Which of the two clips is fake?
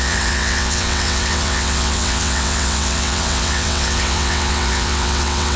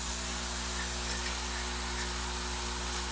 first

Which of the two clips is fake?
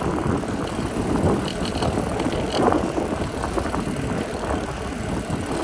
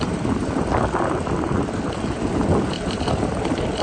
second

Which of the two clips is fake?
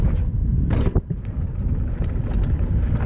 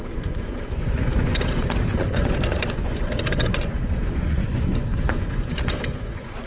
second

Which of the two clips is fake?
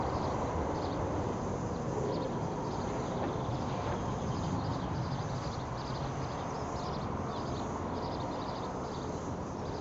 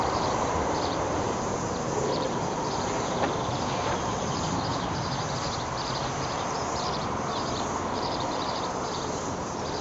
second